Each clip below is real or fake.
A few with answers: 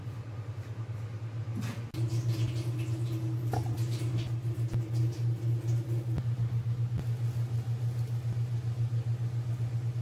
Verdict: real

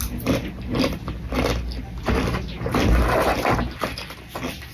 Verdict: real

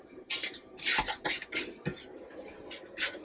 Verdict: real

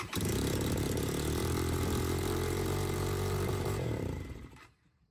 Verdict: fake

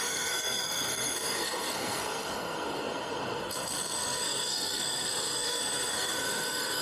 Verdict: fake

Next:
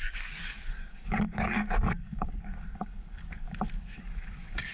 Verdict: fake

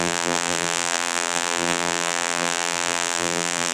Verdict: fake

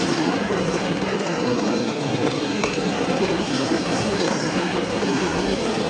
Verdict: fake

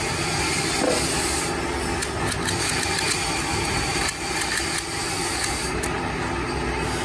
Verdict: real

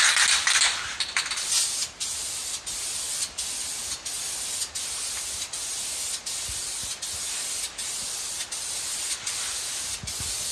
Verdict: real